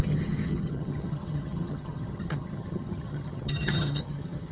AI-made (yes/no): yes